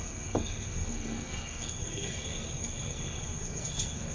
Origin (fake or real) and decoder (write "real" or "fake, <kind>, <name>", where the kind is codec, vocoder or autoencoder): fake, codec, SNAC